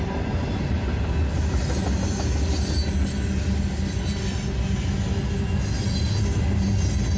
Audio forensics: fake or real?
real